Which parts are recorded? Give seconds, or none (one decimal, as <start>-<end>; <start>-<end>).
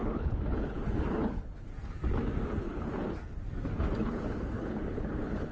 1.7-2.6; 3.0-4.0